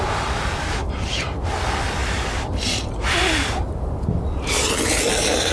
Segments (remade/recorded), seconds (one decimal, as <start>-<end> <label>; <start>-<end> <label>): 0.0-5.5 recorded